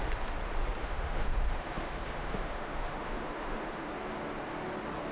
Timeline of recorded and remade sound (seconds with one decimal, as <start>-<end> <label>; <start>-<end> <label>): 0.0-0.8 recorded; 0.8-3.9 remade; 3.9-5.1 recorded